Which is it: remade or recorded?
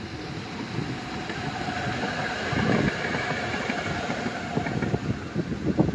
recorded